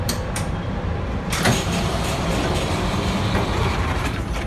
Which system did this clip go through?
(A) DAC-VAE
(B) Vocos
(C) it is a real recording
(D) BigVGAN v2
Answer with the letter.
D